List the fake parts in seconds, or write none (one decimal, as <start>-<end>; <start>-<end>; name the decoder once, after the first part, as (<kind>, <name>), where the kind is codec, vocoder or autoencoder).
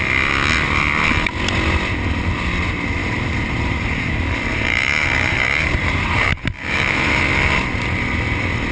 3.0-4.1 (vocoder, BigVGAN v2); 4.5-7.2